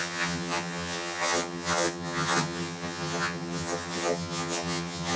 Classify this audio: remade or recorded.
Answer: remade